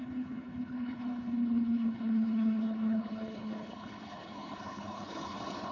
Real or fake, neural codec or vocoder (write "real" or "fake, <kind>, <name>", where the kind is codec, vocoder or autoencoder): fake, codec, HILCodec